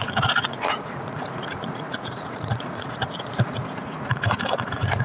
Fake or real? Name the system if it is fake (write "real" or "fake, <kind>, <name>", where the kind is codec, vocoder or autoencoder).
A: fake, vocoder, Vocos